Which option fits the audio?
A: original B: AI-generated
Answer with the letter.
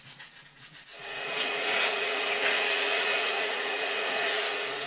B